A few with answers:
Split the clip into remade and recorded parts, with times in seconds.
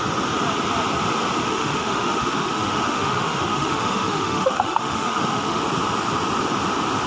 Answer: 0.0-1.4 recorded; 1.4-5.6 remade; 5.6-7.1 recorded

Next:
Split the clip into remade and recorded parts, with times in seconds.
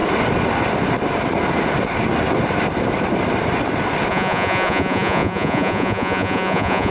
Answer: 0.0-4.1 recorded; 4.1-6.9 remade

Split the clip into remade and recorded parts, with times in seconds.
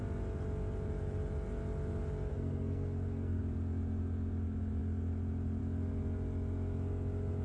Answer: 0.0-2.3 recorded; 2.3-3.4 remade; 3.4-7.4 recorded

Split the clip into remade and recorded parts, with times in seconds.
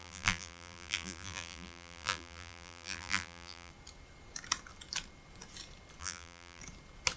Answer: 0.0-3.7 remade; 3.7-6.0 recorded; 6.0-6.6 remade; 6.6-7.2 recorded